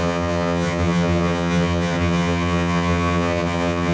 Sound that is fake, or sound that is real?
fake